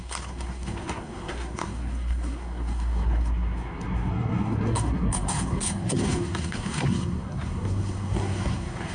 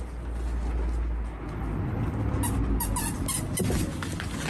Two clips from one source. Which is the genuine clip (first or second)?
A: second